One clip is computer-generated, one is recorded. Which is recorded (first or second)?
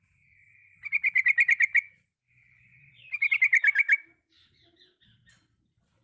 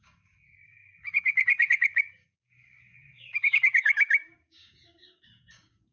first